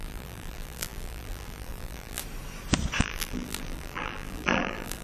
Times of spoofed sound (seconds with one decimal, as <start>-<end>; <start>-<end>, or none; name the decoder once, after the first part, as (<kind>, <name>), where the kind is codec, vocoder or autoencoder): 0.0-2.2 (vocoder, BigVGAN v2); 3.0-5.0